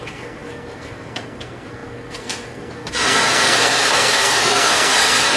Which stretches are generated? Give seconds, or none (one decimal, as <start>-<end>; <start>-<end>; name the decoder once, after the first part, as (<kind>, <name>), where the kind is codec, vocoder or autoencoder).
0.0-5.4 (codec, SNAC)